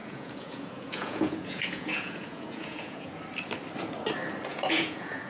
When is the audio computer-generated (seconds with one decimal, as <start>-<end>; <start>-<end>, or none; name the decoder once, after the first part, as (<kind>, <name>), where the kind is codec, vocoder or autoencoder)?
0.0-3.2 (vocoder, Vocos); 4.5-5.3